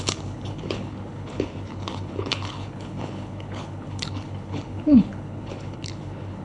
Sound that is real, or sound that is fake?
fake